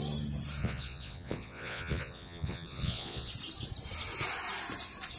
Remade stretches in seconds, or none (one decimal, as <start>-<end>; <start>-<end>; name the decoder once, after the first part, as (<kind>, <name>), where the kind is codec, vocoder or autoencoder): 0.6-3.3 (vocoder, Vocos)